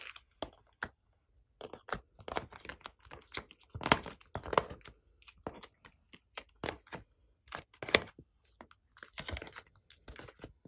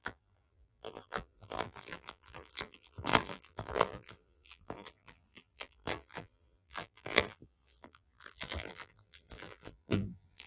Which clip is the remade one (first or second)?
second